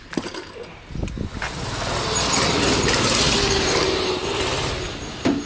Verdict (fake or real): real